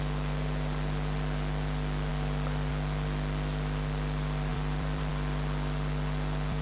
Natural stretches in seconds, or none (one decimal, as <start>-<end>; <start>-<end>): 0.0-4.5; 5.1-6.6